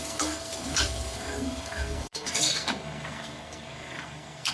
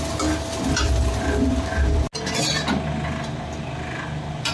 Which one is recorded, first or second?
second